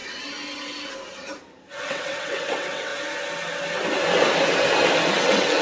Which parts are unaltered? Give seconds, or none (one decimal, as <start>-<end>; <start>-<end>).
0.0-1.9; 2.9-5.1